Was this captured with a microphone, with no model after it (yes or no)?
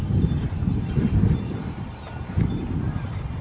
yes